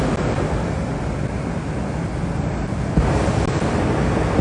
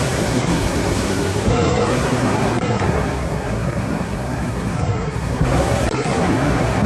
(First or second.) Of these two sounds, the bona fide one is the first